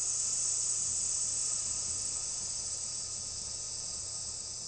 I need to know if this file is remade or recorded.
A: remade